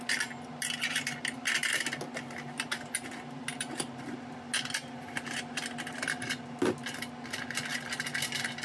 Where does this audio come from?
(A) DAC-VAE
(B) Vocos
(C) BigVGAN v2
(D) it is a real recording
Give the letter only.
D